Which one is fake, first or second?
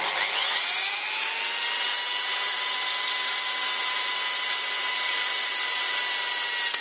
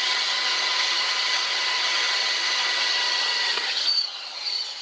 second